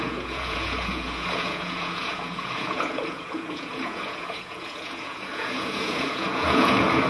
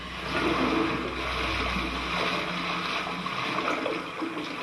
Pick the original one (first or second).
second